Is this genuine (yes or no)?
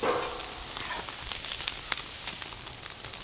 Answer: yes